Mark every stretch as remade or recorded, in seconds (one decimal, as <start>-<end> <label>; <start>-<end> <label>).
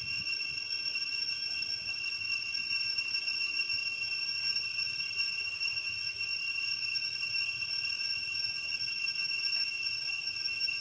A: 0.0-3.8 remade; 3.8-4.4 recorded; 4.4-10.8 remade